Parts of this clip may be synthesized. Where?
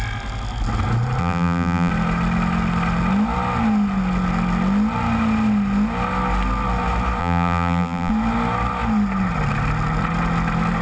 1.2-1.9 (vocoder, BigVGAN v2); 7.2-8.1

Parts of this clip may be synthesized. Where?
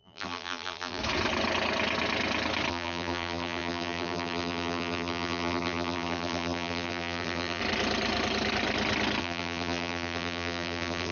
0.0-1.0 (vocoder, BigVGAN v2); 2.7-7.6; 9.2-11.1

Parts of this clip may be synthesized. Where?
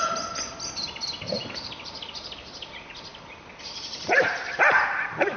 none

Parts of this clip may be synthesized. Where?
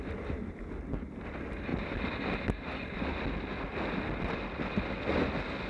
none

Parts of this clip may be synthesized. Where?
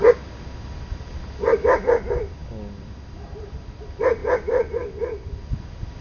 4.2-4.7 (vocoder, BigVGAN v2)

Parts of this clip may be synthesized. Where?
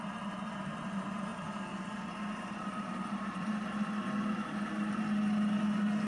1.3-5.0 (vocoder, BigVGAN v2)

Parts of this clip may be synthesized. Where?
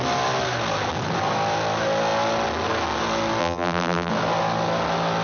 3.4-4.1 (vocoder, BigVGAN v2)